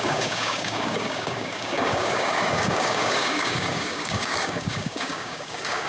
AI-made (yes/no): yes